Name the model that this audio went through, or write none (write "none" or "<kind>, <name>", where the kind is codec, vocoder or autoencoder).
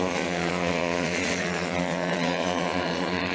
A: vocoder, Vocos